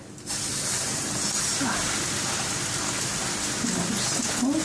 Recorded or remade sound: recorded